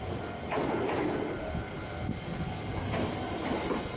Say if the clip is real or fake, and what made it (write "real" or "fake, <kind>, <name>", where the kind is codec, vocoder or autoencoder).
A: real